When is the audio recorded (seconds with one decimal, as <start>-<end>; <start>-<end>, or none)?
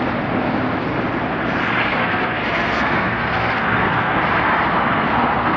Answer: 0.0-1.8; 4.2-4.7